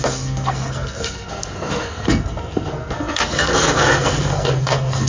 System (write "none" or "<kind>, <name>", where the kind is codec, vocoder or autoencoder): codec, SNAC